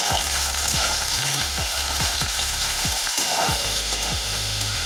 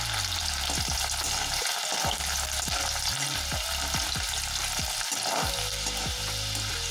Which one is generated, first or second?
first